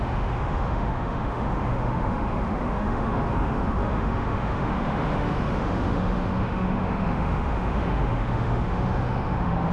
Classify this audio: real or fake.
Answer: fake